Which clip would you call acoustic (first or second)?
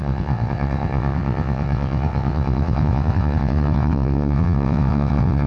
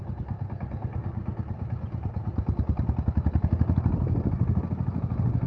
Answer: second